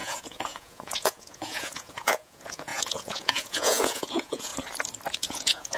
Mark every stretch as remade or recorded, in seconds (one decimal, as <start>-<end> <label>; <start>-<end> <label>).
0.0-4.5 remade; 4.5-5.1 recorded; 5.1-5.8 remade